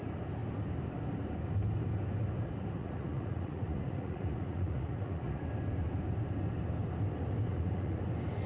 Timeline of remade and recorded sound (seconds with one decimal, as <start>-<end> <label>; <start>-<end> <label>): 0.0-2.8 recorded; 2.8-5.4 remade; 5.4-7.5 recorded; 7.5-8.0 remade; 8.0-8.5 recorded